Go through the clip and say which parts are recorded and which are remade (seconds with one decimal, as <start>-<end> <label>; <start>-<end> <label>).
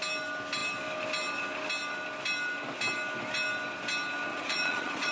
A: 0.0-4.3 recorded; 4.3-5.1 remade